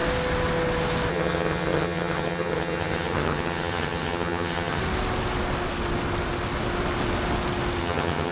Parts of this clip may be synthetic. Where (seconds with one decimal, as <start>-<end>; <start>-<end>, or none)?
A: 1.1-4.8; 7.8-8.3